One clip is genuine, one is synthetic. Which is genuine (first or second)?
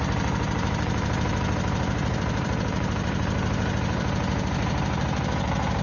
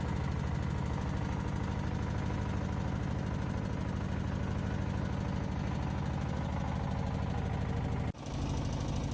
second